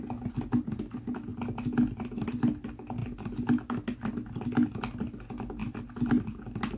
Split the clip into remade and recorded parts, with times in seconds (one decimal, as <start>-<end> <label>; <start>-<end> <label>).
0.0-6.8 recorded